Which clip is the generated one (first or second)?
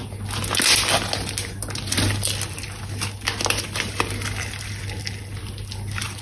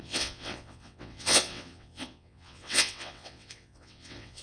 second